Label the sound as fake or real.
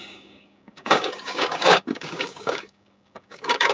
fake